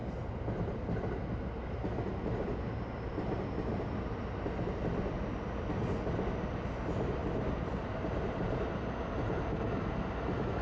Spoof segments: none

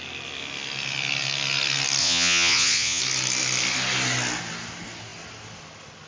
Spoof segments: 2.0-3.0 (vocoder, Vocos)